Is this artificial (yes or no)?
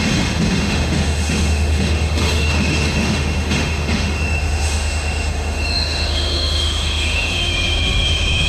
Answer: yes